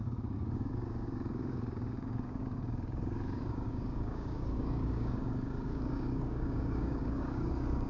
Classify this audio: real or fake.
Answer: fake